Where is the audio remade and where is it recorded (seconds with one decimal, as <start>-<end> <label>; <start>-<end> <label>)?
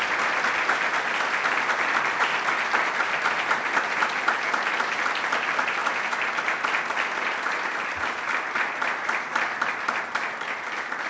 0.0-11.1 recorded